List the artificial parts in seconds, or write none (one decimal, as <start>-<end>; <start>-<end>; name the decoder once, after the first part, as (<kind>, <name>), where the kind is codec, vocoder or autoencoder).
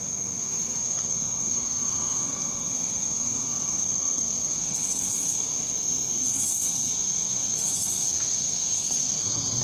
0.0-9.6 (codec, SNAC)